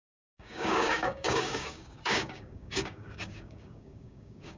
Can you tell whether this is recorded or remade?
remade